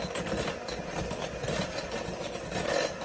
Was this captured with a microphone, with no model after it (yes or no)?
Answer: yes